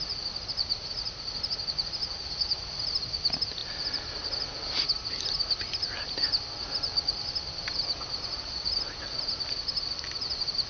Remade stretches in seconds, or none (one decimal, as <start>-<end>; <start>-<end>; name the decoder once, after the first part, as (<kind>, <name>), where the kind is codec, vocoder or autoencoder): none